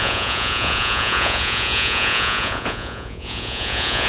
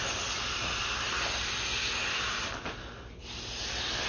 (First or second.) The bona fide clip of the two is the second